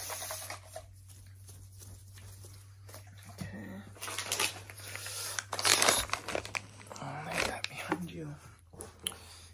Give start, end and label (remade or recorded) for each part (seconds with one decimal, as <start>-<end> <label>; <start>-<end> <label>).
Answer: 0.0-9.5 recorded